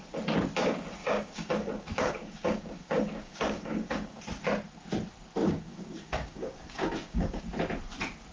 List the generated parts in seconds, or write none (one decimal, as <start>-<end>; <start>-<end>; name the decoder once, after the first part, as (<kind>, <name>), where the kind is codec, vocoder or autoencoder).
1.0-4.2 (codec, DAC); 5.4-7.4